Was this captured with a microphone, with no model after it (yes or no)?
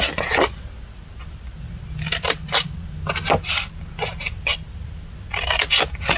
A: yes